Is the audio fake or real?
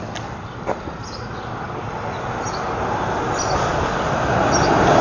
real